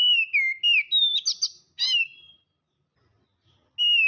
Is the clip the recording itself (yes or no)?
yes